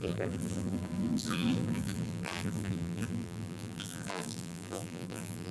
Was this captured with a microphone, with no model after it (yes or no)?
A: no